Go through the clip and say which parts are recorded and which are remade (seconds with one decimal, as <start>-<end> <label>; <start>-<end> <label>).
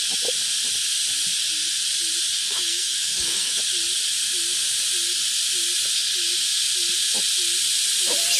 0.0-2.4 recorded; 2.4-3.6 remade; 3.6-8.4 recorded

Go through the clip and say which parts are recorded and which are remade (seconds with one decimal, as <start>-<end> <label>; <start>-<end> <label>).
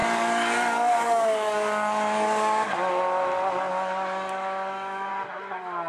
0.0-2.7 remade; 2.7-3.7 recorded; 3.7-5.1 remade; 5.1-5.9 recorded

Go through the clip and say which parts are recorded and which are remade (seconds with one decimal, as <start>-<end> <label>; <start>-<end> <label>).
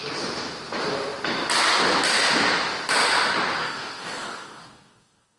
0.0-3.6 recorded; 3.6-5.4 remade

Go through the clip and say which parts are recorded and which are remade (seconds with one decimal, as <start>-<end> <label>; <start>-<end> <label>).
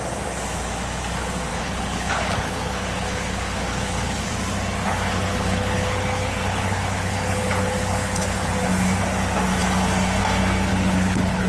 0.0-1.5 recorded; 1.5-4.3 remade; 4.3-4.8 recorded; 4.8-8.5 remade; 8.5-10.7 recorded; 10.7-11.5 remade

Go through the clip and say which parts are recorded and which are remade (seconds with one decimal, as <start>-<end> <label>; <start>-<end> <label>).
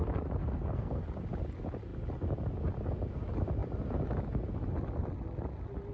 0.0-0.4 recorded; 0.4-1.0 remade; 1.0-5.9 recorded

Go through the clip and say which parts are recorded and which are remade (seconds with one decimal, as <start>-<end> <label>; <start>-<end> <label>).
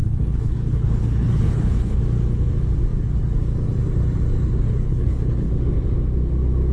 0.0-2.0 remade; 2.0-4.9 recorded; 4.9-5.5 remade; 5.5-6.7 recorded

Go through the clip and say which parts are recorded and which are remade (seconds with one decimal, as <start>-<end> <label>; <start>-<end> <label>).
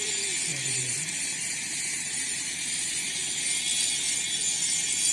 0.0-0.5 recorded; 0.5-3.6 remade; 3.6-5.1 recorded